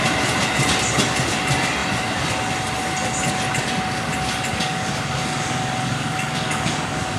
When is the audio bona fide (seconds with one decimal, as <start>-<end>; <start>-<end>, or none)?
0.0-4.5